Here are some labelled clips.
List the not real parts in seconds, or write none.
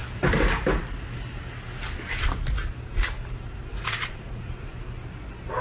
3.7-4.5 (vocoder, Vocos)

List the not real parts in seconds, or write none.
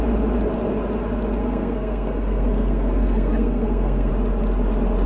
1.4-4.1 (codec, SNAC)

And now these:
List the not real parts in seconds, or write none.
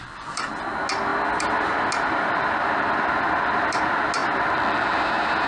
none